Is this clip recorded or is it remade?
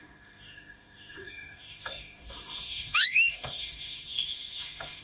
remade